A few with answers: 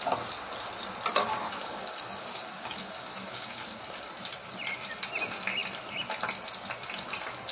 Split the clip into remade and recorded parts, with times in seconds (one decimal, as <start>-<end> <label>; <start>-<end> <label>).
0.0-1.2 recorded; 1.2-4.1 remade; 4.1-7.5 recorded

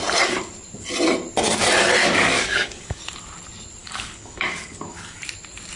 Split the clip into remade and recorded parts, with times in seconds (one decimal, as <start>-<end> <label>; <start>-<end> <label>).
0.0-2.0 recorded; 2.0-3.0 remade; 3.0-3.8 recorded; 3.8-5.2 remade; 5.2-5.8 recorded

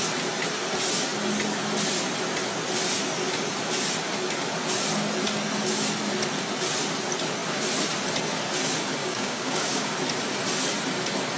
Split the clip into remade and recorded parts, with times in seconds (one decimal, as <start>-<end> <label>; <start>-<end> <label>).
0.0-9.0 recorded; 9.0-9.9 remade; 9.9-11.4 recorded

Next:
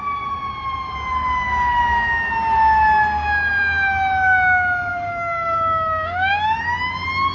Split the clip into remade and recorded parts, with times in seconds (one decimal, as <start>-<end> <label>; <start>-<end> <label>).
0.0-4.9 recorded; 4.9-6.6 remade; 6.6-7.3 recorded

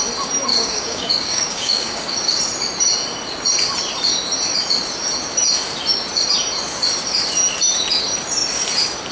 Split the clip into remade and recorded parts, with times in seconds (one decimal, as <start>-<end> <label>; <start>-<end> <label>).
0.0-0.5 recorded; 0.5-2.4 remade; 2.4-9.1 recorded